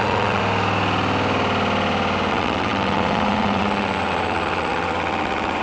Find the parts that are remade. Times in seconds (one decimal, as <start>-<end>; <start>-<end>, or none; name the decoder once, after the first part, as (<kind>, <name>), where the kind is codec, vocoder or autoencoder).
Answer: 0.0-0.4 (vocoder, WaveNeXt); 2.3-5.6